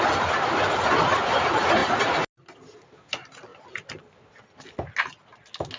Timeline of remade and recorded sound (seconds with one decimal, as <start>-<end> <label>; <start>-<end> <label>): 0.0-5.8 recorded